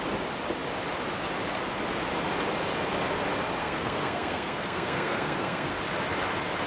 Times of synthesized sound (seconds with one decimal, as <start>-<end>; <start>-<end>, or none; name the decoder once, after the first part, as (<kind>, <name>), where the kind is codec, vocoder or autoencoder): 3.6-5.8 (codec, SNAC)